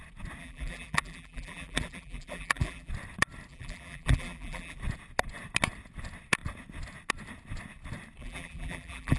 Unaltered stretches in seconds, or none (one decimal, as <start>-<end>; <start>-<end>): 0.0-0.4; 2.9-3.5; 4.8-8.2